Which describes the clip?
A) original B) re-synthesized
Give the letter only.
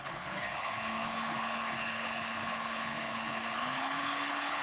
B